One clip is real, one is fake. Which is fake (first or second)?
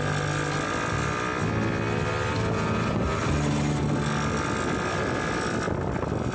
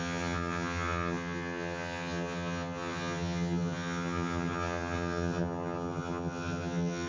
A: second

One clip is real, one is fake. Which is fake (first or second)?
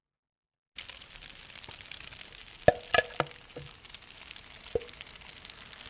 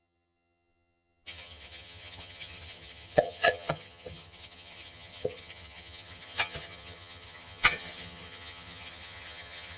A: second